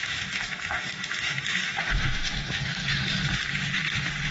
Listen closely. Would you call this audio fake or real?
fake